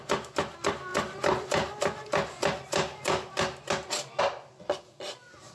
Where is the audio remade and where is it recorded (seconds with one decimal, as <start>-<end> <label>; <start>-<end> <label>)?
0.0-5.5 recorded